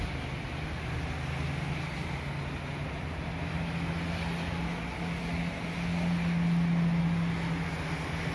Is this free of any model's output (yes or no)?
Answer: yes